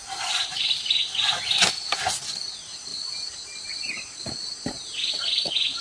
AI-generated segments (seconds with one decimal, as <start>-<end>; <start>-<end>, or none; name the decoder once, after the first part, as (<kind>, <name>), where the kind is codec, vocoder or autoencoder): 2.9-3.7 (vocoder, BigVGAN v2); 4.4-5.8